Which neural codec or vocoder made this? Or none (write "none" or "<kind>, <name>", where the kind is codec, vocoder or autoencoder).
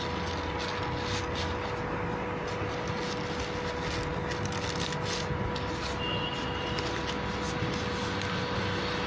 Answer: none